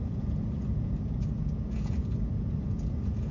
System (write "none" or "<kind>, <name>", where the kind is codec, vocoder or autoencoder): vocoder, Vocos